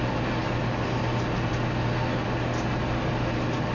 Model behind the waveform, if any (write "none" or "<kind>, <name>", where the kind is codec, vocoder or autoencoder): none